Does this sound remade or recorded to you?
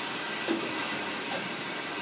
recorded